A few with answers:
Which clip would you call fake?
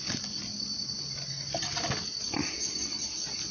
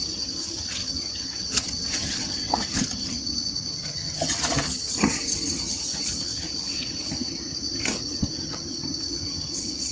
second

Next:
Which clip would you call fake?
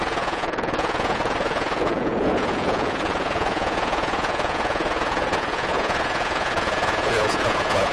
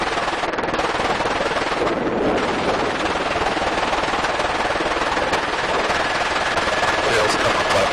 first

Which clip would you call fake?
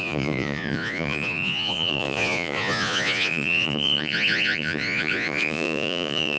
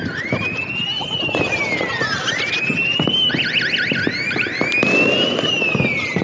first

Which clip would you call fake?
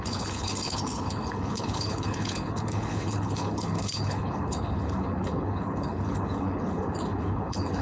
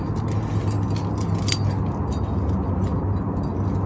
first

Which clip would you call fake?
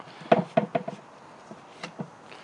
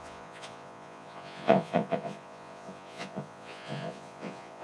second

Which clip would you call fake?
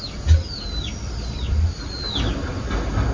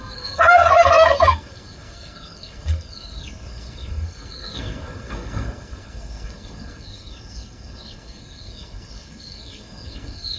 second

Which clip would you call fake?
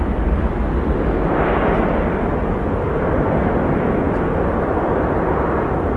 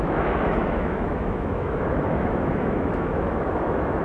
second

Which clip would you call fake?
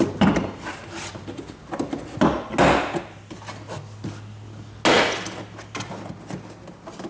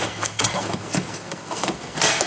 second